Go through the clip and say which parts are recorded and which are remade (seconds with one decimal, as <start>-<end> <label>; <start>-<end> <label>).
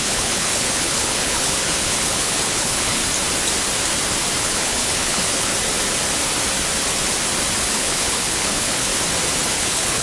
0.0-3.0 remade; 3.0-4.4 recorded; 4.4-5.5 remade; 5.5-7.6 recorded; 7.6-8.9 remade; 8.9-9.5 recorded; 9.5-10.0 remade